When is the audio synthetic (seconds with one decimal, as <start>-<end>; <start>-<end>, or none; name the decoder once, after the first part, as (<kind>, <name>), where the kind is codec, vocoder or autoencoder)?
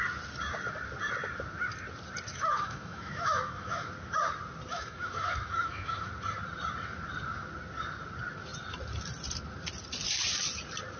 2.3-3.9 (autoencoder, DAC-VAE); 4.7-6.1